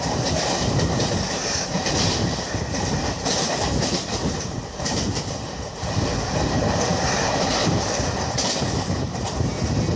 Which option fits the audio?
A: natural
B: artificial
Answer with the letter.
B